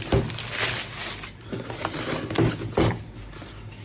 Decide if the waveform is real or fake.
real